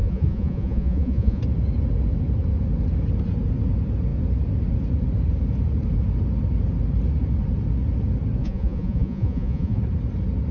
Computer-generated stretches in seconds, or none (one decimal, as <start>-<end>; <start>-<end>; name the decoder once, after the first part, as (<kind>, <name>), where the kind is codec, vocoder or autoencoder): 0.0-1.4 (vocoder, Vocos); 8.4-9.8